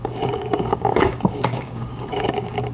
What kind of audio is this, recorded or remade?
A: remade